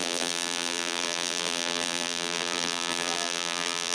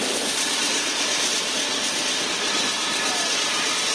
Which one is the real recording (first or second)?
second